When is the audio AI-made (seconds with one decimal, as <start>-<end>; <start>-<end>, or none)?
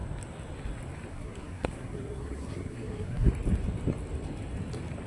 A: 1.1-3.3